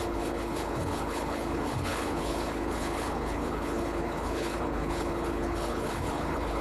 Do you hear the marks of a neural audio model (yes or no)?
yes